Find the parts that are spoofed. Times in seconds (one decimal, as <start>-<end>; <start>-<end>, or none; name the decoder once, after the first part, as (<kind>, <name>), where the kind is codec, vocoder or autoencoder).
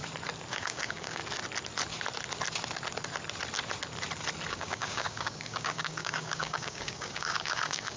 0.5-1.2 (codec, DAC); 4.5-8.0